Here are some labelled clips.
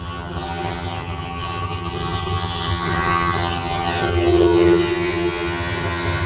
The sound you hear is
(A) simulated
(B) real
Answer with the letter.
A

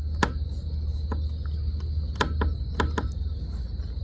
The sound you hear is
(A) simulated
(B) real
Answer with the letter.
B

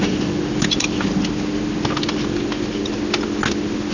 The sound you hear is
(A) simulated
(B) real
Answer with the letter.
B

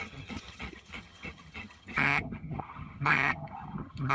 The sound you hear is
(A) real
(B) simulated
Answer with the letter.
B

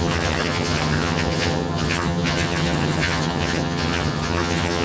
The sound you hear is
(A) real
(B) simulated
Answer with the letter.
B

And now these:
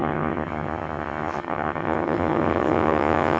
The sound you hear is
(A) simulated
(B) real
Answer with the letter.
A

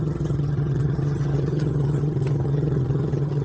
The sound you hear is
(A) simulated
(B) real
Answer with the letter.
A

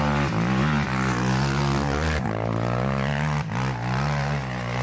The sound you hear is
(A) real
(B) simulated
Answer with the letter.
A